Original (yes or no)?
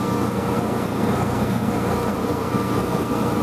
no